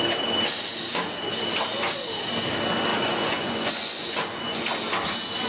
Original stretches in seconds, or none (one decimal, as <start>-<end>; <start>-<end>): 0.0-2.9; 4.6-5.5